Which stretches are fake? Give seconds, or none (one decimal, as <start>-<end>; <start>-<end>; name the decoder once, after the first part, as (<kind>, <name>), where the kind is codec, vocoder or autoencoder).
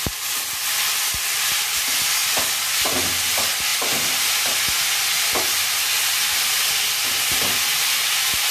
none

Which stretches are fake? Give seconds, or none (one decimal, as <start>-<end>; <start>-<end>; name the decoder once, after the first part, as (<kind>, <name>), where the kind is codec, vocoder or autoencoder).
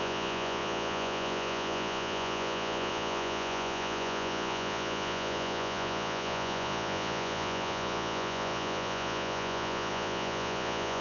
0.0-11.0 (vocoder, Vocos)